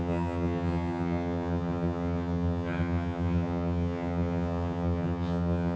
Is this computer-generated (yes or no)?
yes